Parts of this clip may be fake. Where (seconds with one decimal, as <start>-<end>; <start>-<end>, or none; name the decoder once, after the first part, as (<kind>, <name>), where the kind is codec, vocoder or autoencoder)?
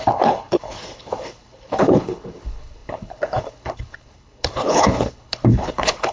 0.0-6.1 (codec, HILCodec)